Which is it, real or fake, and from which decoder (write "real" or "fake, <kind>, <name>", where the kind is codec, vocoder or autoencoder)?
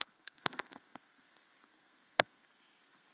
fake, codec, SNAC